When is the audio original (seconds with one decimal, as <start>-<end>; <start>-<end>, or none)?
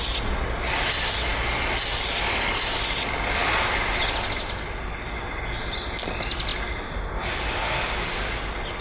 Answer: 0.0-8.8